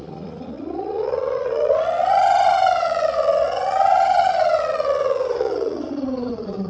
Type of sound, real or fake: fake